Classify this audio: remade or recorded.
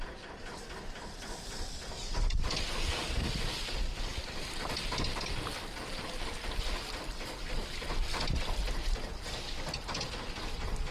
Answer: recorded